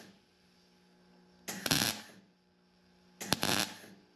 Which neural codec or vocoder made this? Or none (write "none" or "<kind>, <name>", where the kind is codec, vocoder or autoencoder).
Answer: none